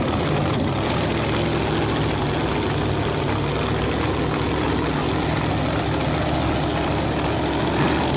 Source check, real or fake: real